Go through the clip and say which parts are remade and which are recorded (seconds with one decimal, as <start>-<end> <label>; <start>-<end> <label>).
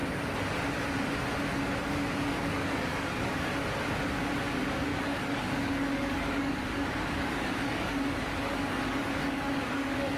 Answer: 0.0-1.8 recorded; 1.8-3.5 remade; 3.5-4.9 recorded; 4.9-10.2 remade